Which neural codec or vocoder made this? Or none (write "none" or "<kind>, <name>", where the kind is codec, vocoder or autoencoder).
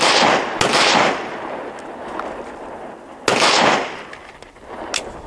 none